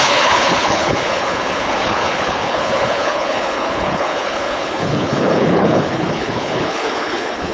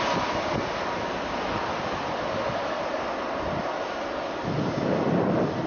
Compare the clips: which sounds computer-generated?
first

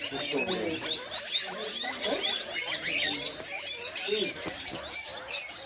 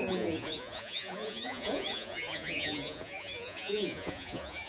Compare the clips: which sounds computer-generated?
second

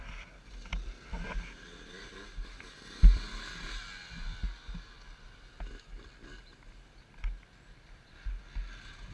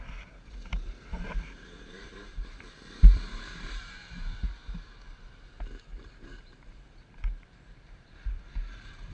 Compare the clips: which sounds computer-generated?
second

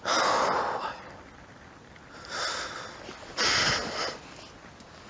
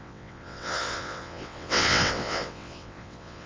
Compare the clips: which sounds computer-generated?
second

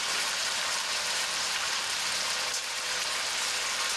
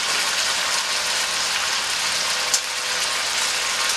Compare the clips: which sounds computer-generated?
first